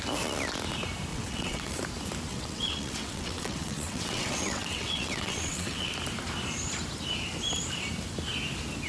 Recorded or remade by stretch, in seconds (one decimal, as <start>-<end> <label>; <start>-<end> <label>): 0.0-1.1 recorded; 1.1-1.8 remade; 1.8-2.3 recorded; 2.3-5.9 remade; 5.9-8.9 recorded

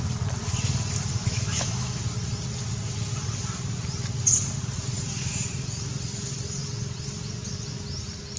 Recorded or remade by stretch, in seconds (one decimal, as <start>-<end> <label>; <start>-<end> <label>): 0.0-1.2 recorded; 1.2-2.0 remade; 2.0-8.4 recorded